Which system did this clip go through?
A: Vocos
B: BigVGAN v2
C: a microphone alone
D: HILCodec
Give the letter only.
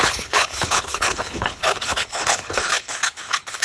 D